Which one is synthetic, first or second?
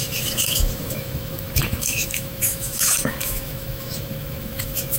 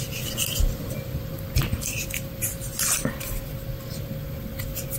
first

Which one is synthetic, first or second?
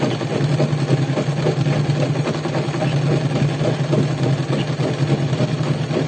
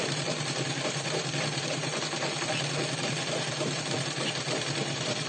second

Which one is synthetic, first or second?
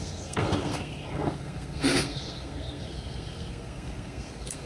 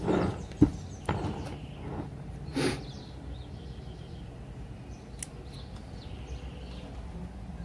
first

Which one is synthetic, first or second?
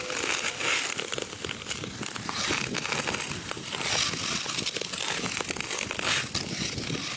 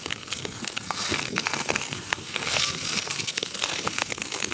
second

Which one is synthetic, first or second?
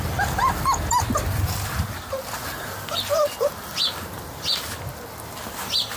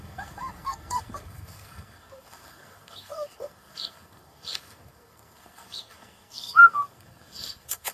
second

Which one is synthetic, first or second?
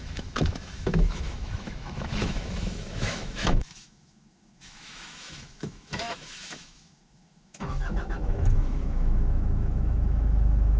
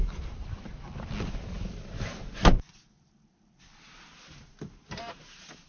first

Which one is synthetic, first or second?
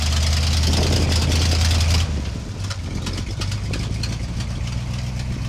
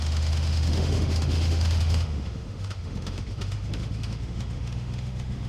second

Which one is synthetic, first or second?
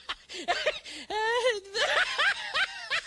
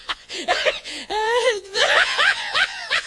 second